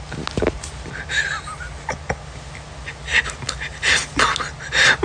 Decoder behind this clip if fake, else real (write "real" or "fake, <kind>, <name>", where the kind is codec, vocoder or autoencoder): real